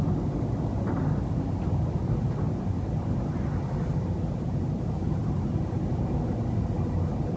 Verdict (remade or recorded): recorded